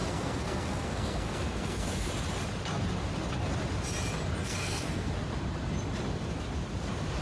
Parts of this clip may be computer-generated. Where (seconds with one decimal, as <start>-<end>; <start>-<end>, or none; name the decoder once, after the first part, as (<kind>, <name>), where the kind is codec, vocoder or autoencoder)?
0.0-2.1 (codec, SNAC); 4.4-5.1